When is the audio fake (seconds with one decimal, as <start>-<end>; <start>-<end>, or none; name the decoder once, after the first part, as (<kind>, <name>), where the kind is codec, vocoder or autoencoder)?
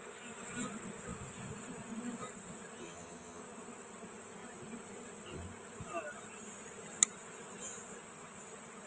2.8-3.4 (vocoder, HiFi-GAN)